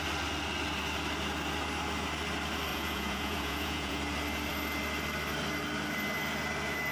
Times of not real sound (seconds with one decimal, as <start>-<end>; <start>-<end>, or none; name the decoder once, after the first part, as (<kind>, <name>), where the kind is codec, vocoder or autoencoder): 2.7-4.0 (vocoder, Vocos)

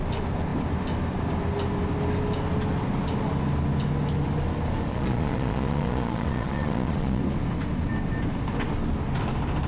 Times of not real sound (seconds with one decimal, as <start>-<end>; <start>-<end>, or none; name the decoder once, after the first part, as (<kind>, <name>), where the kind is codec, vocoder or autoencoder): 4.9-7.2 (vocoder, Vocos)

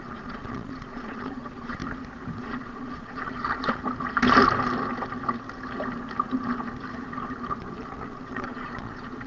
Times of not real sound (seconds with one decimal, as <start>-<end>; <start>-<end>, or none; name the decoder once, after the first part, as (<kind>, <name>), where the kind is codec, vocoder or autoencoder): 0.0-1.8 (vocoder, Vocos); 2.4-3.8; 7.8-9.3

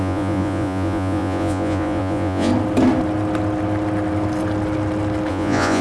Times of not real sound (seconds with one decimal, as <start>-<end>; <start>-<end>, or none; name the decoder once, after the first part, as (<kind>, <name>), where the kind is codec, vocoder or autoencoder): 0.0-2.5 (vocoder, Vocos); 5.3-5.8

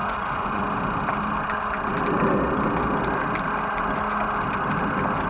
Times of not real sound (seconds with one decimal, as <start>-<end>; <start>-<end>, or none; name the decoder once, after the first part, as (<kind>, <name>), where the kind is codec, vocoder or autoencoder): 0.0-0.6 (vocoder, Vocos)

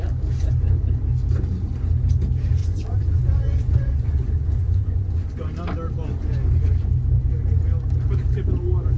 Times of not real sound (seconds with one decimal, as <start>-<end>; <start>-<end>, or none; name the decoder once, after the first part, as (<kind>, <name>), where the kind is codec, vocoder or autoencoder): 2.6-5.2 (vocoder, Vocos)